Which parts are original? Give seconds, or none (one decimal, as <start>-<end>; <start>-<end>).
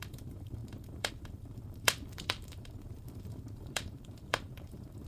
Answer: none